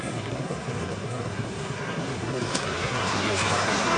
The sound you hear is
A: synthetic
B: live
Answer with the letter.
A